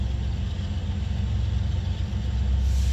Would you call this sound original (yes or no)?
yes